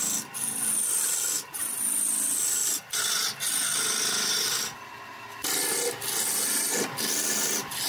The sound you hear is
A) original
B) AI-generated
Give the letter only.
A